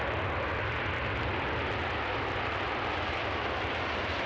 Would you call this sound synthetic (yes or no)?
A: no